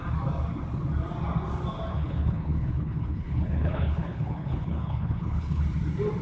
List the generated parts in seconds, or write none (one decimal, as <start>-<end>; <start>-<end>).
1.9-5.6